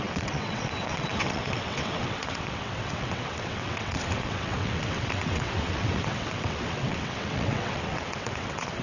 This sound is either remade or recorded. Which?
remade